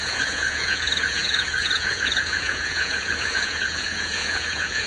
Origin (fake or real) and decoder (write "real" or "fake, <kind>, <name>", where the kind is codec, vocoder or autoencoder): fake, vocoder, Vocos